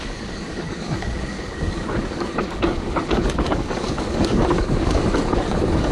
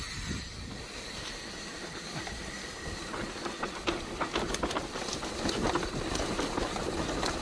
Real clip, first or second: second